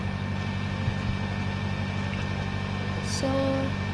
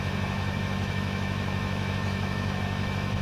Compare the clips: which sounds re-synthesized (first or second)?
second